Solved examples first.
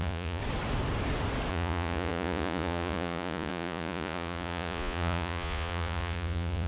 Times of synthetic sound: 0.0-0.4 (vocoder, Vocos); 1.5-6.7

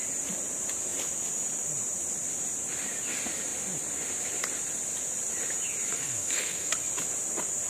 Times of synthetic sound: 5.9-6.7 (codec, SNAC)

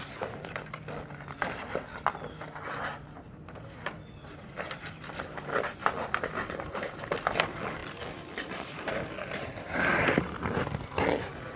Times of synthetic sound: none

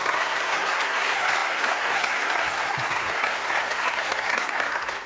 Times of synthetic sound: 0.0-5.1 (codec, SNAC)

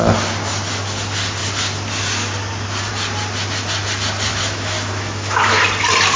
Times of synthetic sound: 4.3-5.6 (autoencoder, DAC-VAE)